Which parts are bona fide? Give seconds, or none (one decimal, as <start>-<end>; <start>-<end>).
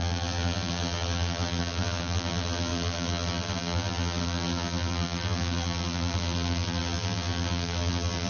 none